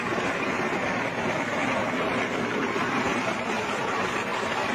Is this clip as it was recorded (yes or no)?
yes